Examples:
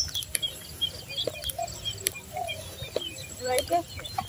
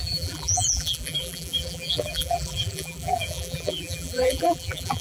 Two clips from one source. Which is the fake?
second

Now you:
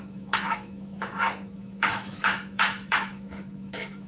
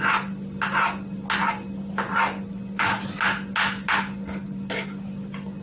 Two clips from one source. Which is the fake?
first